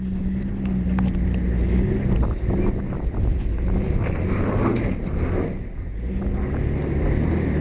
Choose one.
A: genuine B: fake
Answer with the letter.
A